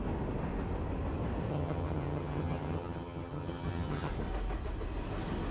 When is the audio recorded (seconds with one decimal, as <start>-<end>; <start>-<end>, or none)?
0.0-1.5; 4.1-5.5